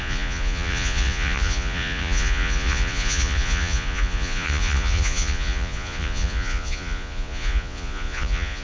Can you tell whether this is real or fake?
fake